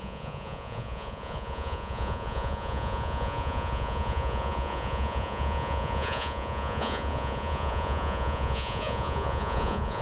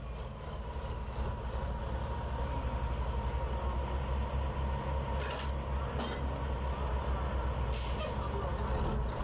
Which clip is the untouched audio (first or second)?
second